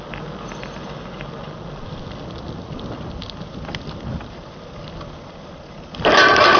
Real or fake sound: real